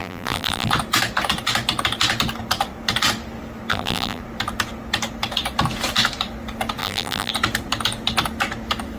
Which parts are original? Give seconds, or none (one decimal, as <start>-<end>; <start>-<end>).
0.7-3.7; 4.2-6.8; 7.3-9.0